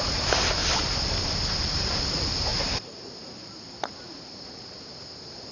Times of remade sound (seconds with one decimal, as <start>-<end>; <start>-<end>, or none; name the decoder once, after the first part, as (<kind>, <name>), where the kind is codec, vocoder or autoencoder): 0.0-0.6 (vocoder, BigVGAN v2); 1.6-5.5